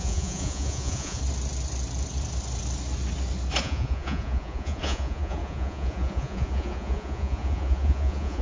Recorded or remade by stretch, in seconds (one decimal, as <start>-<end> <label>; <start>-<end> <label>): 0.0-1.2 remade; 1.2-3.6 recorded; 3.6-8.4 remade